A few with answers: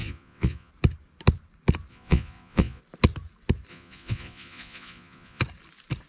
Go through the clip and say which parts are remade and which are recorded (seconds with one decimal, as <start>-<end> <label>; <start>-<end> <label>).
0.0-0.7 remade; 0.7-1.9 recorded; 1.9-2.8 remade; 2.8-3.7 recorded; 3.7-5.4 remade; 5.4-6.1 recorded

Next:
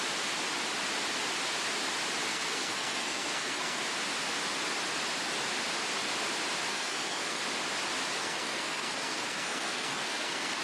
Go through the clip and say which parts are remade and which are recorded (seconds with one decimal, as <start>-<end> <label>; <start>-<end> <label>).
0.0-2.3 recorded; 2.3-3.8 remade; 3.8-6.7 recorded; 6.7-7.4 remade; 7.4-8.2 recorded; 8.2-10.6 remade

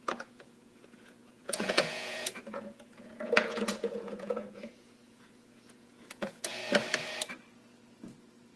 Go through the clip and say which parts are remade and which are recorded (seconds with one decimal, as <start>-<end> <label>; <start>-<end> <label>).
0.0-6.6 remade; 6.6-8.6 recorded